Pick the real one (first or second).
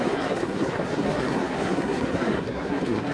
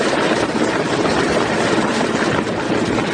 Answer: second